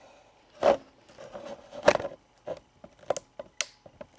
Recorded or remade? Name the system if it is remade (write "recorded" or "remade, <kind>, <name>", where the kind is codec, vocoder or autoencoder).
recorded